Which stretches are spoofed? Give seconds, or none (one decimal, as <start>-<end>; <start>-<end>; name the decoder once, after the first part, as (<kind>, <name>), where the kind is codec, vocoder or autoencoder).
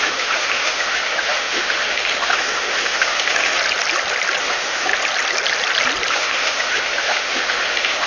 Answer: 0.0-3.6 (autoencoder, DAC-VAE); 4.4-4.9; 6.1-8.1